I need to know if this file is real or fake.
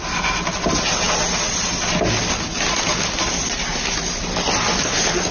real